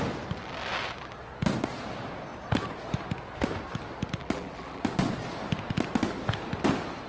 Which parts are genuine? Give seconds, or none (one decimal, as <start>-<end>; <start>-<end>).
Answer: 0.0-4.2; 4.8-7.1

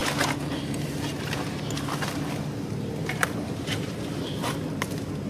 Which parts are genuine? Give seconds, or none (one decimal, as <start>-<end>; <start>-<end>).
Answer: 0.0-3.0; 4.2-5.3

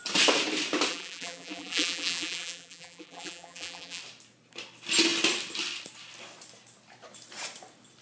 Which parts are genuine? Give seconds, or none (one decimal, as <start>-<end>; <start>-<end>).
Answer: 0.0-0.9; 4.0-8.0